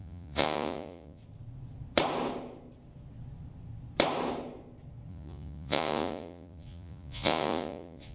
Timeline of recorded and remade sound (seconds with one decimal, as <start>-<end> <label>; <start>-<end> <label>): 0.0-1.2 remade; 1.2-5.1 recorded; 5.1-8.1 remade